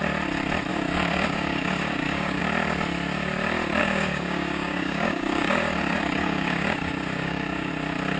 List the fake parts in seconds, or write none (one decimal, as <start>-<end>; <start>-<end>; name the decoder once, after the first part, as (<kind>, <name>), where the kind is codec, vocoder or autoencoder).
0.7-2.4 (codec, DAC); 3.8-7.7